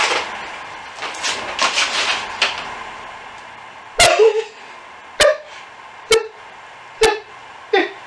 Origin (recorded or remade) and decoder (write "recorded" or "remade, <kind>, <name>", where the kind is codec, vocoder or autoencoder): recorded